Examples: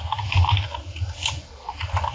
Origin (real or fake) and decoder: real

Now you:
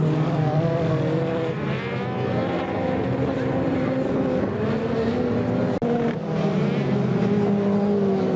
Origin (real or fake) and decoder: real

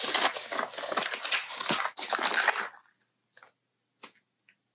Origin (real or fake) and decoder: real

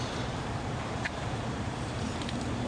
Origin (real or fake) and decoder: fake, vocoder, BigVGAN v2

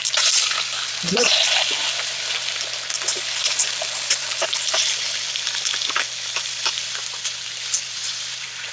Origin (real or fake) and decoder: real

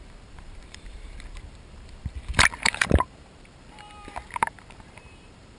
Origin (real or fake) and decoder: fake, vocoder, BigVGAN v2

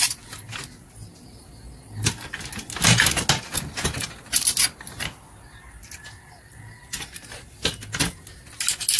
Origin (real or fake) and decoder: real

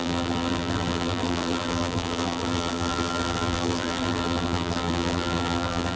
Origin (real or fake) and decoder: fake, vocoder, BigVGAN v2